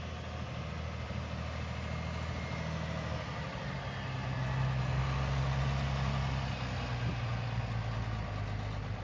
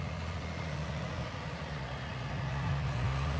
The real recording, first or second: first